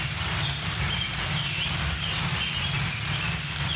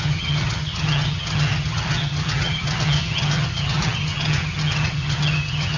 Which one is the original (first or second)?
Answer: first